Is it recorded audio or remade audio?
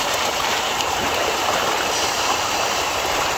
remade